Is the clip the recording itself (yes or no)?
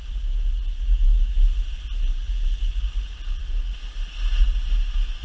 yes